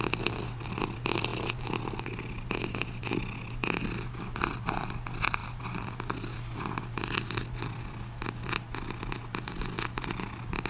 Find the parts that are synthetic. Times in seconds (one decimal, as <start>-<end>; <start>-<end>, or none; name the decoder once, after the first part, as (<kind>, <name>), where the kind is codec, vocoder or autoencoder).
none